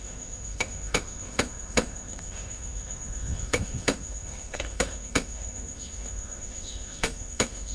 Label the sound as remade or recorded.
remade